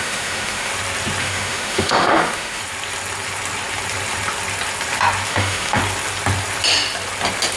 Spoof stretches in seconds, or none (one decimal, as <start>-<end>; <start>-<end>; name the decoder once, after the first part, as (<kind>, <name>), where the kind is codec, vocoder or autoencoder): 0.0-0.7 (autoencoder, DAC-VAE); 1.2-2.6; 5.3-5.8